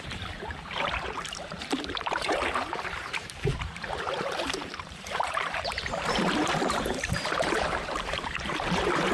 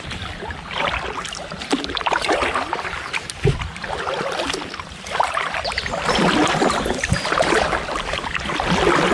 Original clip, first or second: second